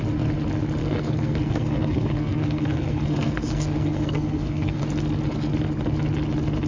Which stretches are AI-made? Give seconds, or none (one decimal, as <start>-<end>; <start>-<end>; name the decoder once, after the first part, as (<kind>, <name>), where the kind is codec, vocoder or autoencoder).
0.8-4.8 (codec, SNAC)